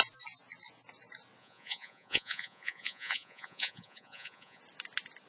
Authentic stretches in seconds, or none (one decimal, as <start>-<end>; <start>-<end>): 0.0-1.4; 4.6-5.3